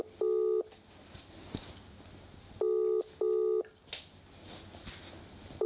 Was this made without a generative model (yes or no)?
yes